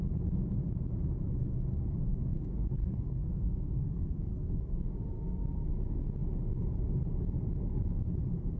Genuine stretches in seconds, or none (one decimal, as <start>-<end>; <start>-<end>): 0.0-2.1; 4.9-8.6